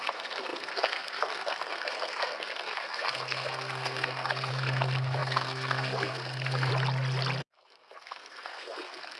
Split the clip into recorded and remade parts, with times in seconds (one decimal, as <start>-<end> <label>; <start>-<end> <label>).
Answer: 0.0-6.7 remade; 6.7-7.4 recorded; 7.4-9.2 remade